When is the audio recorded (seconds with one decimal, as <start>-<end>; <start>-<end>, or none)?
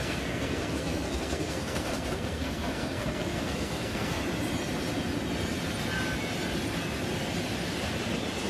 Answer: 4.2-8.5